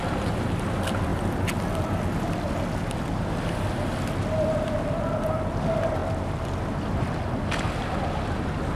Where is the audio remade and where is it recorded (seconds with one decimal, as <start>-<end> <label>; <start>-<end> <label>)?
0.0-8.7 recorded